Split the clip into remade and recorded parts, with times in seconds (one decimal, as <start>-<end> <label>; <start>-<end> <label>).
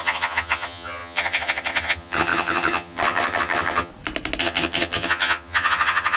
0.0-3.9 remade; 3.9-4.4 recorded; 4.4-6.2 remade